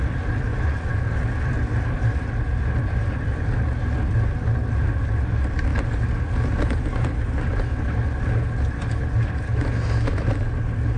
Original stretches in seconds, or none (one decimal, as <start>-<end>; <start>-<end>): 0.0-0.5; 1.0-11.0